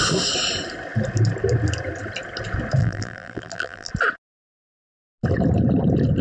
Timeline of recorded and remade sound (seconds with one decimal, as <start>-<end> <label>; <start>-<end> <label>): 0.0-2.8 recorded; 2.8-3.9 remade; 3.9-6.2 recorded